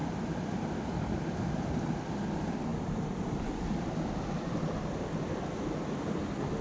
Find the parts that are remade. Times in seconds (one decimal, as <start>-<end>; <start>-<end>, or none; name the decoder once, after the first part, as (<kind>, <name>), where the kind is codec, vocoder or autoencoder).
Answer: none